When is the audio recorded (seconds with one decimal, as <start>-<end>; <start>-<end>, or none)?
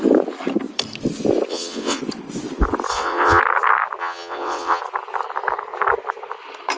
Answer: 0.0-1.5; 2.0-2.9; 3.4-4.0; 4.8-6.8